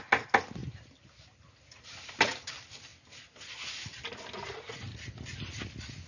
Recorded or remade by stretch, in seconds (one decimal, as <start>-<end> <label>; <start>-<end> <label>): 0.0-6.1 recorded